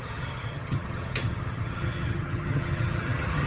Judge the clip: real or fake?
fake